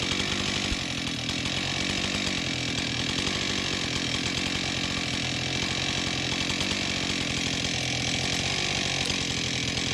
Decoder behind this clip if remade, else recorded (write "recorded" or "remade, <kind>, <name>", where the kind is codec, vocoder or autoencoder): recorded